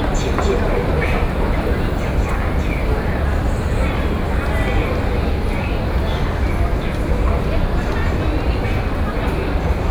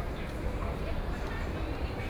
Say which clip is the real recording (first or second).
first